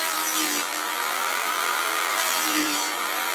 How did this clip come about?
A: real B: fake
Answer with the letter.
B